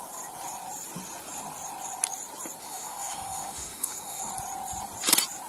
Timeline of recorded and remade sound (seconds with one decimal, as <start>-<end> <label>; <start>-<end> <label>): 0.0-2.6 recorded; 2.6-4.3 remade; 4.3-5.5 recorded